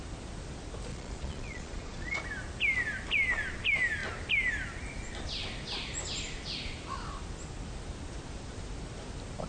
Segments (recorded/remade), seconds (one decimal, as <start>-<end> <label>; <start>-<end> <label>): 0.0-0.9 recorded; 0.9-2.2 remade; 2.2-9.5 recorded